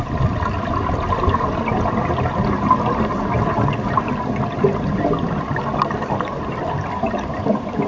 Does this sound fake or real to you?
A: real